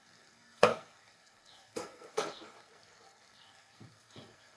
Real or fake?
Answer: fake